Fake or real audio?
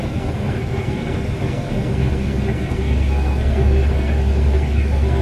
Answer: fake